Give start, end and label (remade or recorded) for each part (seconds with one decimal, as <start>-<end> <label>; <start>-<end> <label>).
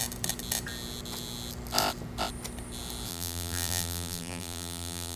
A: 0.0-3.1 recorded; 3.1-5.2 remade